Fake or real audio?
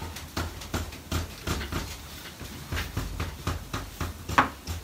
real